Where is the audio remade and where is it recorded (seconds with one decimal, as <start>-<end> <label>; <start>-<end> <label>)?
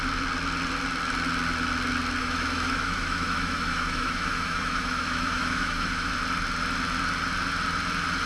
0.0-2.2 recorded; 2.2-6.1 remade; 6.1-8.3 recorded